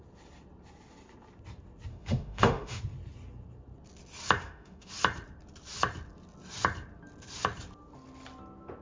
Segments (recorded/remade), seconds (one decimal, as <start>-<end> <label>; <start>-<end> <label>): 0.0-1.9 recorded; 1.9-2.8 remade; 2.8-4.4 recorded; 4.4-4.9 remade; 4.9-8.8 recorded